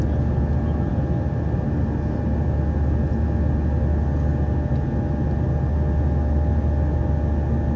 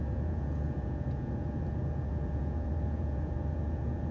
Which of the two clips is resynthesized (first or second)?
second